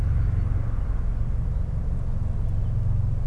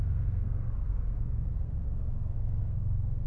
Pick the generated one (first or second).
second